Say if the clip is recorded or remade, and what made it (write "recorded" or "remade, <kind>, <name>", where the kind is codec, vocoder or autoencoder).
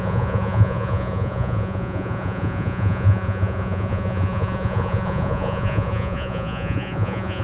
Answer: remade, vocoder, Vocos